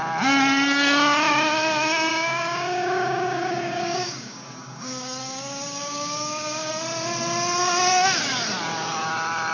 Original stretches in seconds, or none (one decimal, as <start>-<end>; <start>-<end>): 0.0-2.1; 6.7-9.5